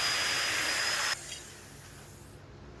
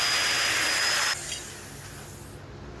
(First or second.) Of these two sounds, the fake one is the first